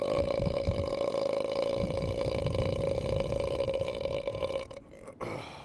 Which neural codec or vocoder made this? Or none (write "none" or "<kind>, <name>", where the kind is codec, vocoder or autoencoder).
none